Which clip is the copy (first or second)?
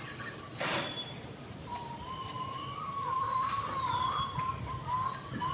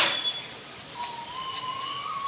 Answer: first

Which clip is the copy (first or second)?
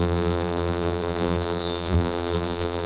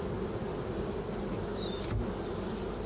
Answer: first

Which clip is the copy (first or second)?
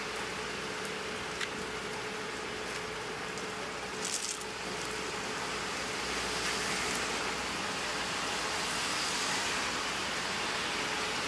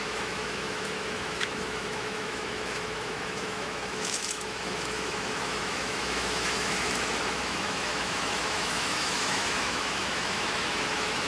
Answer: second